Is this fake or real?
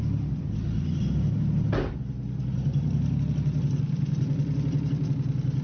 real